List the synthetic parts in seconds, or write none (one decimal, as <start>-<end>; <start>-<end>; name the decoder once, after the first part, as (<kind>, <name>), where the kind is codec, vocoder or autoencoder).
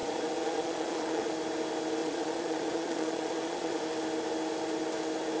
0.0-1.3 (vocoder, Vocos); 2.0-3.8